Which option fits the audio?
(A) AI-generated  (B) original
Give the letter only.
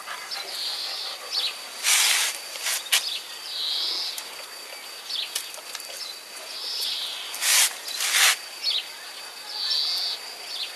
B